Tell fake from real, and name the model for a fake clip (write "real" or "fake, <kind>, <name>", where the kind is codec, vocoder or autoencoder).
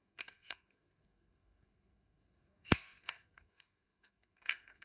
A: fake, codec, SNAC